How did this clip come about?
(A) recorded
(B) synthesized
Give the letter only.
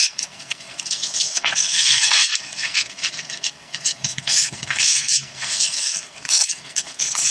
B